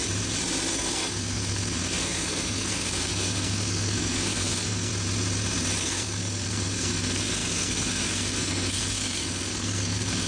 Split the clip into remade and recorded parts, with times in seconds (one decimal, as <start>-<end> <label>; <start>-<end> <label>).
0.0-0.7 recorded; 0.7-4.9 remade; 4.9-5.8 recorded; 5.8-10.3 remade